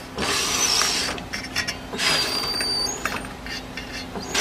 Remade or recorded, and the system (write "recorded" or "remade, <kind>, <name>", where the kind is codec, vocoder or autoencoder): remade, vocoder, BigVGAN v2